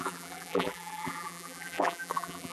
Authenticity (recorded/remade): remade